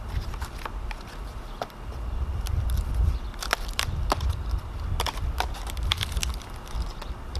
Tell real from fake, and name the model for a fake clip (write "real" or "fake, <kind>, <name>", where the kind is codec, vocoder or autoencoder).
fake, vocoder, BigVGAN v2